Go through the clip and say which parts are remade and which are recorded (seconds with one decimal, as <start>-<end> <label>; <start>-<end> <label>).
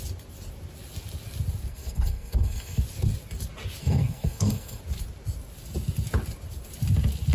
0.0-1.7 recorded; 1.7-2.8 remade; 2.8-3.8 recorded; 3.8-4.8 remade; 4.8-7.3 recorded